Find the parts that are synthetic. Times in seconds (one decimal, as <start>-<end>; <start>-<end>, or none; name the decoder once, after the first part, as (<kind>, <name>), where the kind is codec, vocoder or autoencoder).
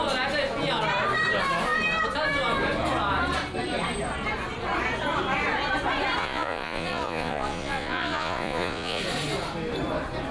6.2-9.0 (vocoder, Vocos)